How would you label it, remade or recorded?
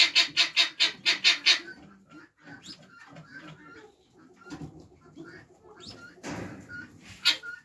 recorded